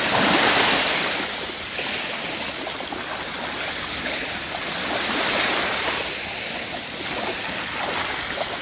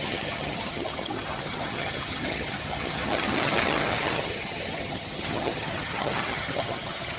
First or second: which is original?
first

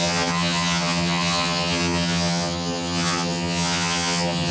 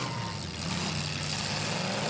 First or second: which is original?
second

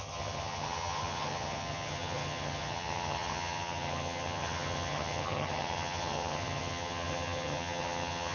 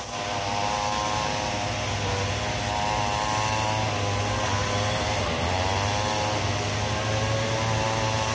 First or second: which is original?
second